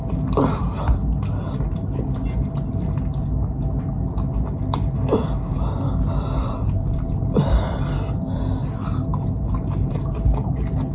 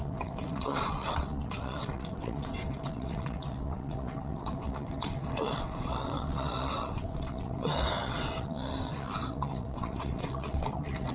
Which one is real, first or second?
first